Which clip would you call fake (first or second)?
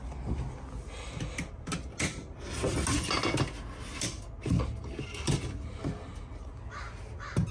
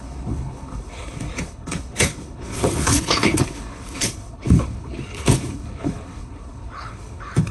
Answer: second